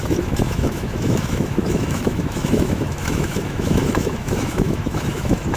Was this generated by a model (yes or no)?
yes